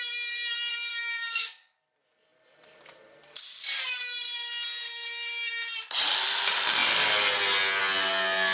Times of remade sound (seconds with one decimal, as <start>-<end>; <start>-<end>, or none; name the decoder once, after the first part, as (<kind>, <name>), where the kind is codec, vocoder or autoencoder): 0.7-1.8 (codec, DAC)